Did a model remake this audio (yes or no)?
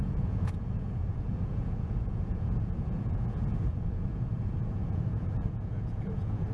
yes